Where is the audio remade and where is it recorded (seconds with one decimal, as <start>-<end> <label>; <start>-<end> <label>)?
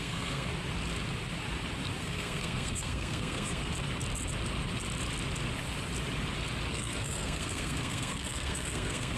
0.0-0.5 remade; 0.5-2.0 recorded; 2.0-3.7 remade; 3.7-6.7 recorded; 6.7-9.2 remade